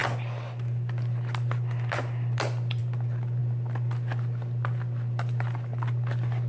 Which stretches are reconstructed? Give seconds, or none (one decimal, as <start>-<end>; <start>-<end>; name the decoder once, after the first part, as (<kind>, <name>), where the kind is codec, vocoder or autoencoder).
none